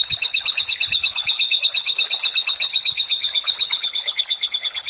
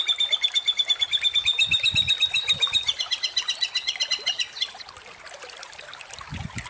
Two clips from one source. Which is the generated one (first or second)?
first